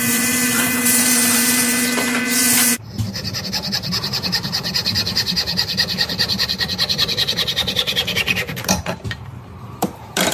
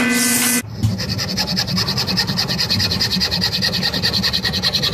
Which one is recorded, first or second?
second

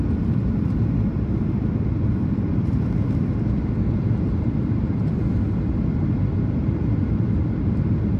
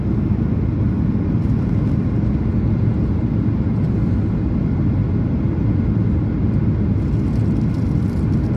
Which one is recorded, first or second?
second